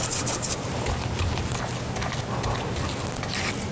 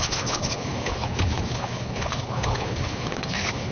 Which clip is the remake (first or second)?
second